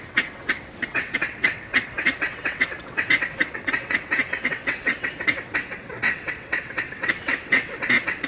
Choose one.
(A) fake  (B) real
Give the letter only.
A